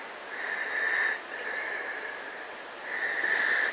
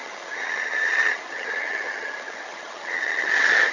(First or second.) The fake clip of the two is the second